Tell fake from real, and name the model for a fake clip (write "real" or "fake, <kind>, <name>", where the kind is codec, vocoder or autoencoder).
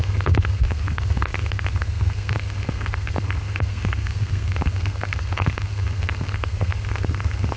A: fake, codec, SNAC